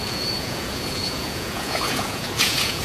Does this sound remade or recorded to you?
remade